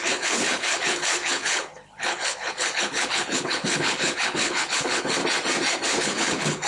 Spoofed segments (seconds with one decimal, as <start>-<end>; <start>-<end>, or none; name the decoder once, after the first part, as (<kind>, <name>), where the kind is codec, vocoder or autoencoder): 0.0-5.2 (codec, HILCodec); 6.0-6.7